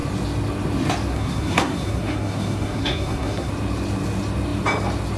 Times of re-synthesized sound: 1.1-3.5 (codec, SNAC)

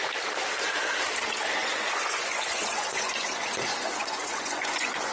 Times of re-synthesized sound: 1.6-5.1 (vocoder, Vocos)

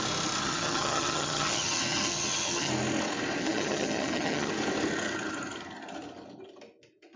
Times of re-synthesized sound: 0.4-2.7 (vocoder, HiFi-GAN); 3.4-4.5